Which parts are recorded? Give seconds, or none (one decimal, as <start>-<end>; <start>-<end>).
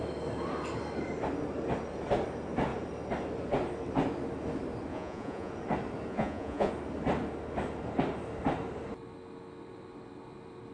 0.0-4.9; 5.5-6.1; 6.7-10.7